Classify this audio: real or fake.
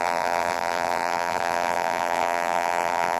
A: fake